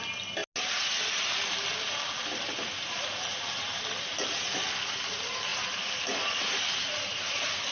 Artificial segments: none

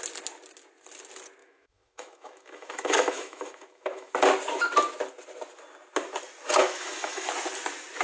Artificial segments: 1.4-4.1; 6.6-7.3

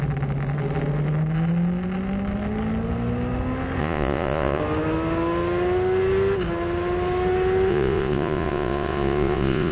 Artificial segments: 3.8-4.6; 7.7-9.7

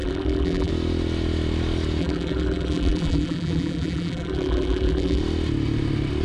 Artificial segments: 0.0-0.7; 2.0-5.2

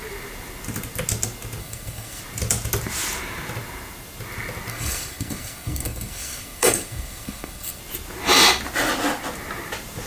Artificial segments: 1.6-2.2; 4.7-7.8

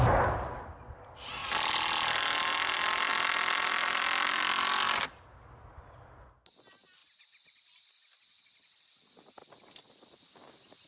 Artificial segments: none